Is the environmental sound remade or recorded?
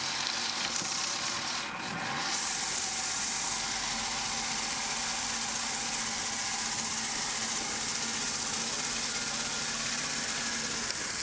recorded